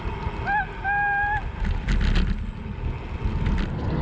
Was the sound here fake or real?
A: real